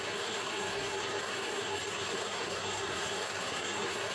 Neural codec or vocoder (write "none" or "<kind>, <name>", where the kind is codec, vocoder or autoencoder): codec, SNAC